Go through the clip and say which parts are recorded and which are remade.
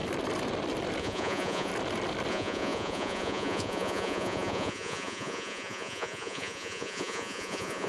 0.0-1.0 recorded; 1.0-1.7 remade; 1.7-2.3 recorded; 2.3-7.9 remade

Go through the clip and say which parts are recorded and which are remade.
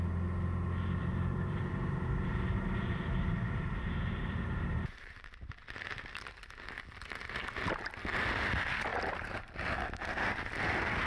0.0-1.0 recorded; 1.0-5.5 remade; 5.5-8.9 recorded; 8.9-9.5 remade; 9.5-11.1 recorded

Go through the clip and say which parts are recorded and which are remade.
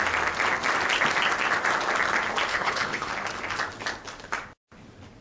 0.0-2.5 recorded; 2.5-3.1 remade; 3.1-5.2 recorded